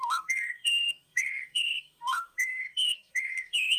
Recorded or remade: remade